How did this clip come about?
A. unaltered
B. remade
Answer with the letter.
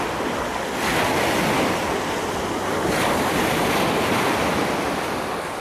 A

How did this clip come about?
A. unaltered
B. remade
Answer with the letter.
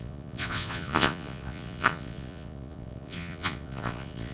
B